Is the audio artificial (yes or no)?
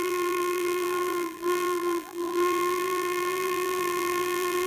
yes